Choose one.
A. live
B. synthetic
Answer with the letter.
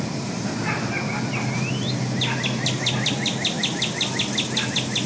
A